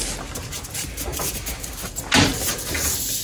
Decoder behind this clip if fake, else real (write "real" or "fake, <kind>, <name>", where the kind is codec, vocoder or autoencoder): real